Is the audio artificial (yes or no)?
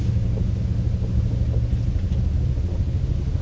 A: no